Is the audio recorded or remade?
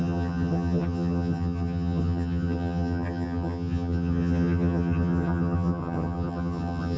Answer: remade